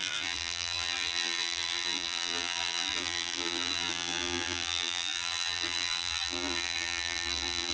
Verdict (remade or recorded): remade